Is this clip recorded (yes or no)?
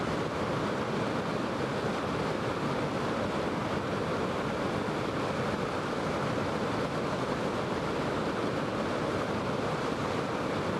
yes